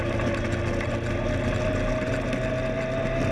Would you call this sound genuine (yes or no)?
yes